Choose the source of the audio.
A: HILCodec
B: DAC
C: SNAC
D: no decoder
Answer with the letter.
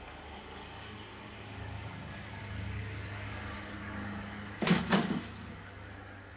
B